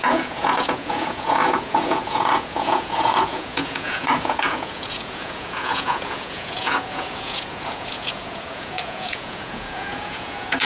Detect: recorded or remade remade